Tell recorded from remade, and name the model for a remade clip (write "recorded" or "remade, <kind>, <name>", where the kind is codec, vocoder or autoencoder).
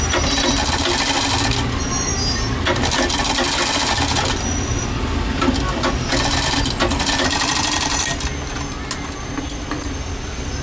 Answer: recorded